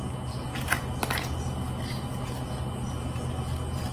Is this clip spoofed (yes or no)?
no